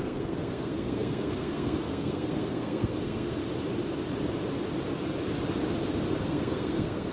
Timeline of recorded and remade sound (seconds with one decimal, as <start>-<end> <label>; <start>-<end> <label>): 0.0-3.4 remade; 3.4-6.2 recorded; 6.2-7.1 remade